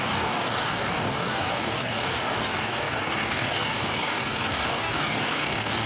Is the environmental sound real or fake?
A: fake